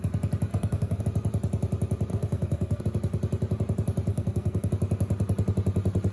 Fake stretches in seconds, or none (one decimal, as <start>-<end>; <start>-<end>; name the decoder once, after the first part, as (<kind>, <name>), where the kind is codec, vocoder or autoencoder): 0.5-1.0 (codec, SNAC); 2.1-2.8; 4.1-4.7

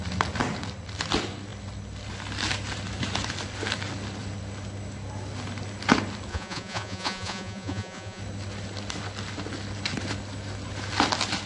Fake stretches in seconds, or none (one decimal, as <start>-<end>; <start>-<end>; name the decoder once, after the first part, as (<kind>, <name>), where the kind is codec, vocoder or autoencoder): 6.3-8.2 (vocoder, Vocos)

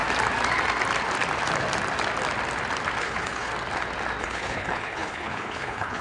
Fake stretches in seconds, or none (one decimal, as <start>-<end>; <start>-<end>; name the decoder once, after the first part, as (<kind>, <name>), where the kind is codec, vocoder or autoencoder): 3.0-3.5 (codec, HILCodec); 4.2-6.0